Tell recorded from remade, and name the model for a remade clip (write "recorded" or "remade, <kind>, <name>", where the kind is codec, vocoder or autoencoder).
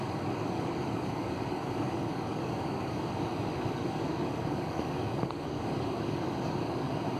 remade, codec, DAC